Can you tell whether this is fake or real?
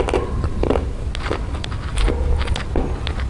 real